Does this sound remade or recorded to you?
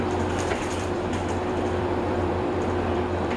remade